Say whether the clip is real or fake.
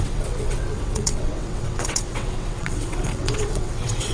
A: fake